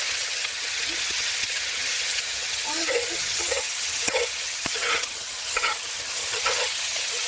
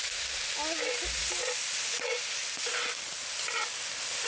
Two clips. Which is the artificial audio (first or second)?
first